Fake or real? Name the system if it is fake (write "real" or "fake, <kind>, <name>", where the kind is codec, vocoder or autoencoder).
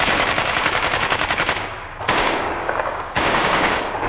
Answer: fake, codec, DAC